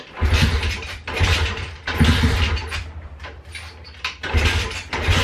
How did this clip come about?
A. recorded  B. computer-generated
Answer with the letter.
A